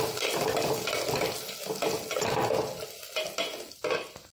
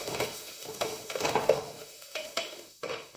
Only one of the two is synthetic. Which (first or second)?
second